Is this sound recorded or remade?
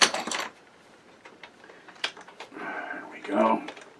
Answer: remade